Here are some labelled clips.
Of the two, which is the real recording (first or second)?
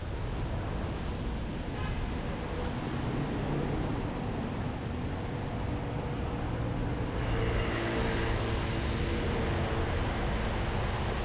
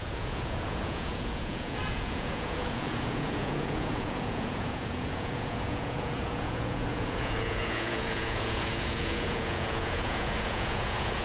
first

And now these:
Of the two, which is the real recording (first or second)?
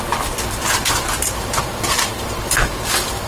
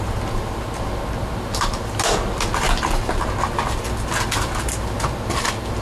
second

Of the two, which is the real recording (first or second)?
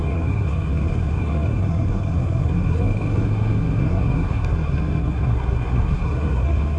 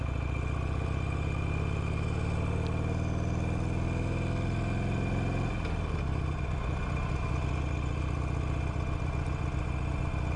second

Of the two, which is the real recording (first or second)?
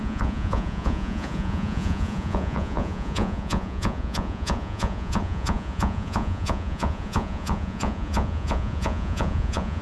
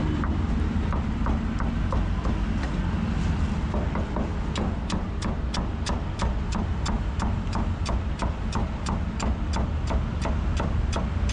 second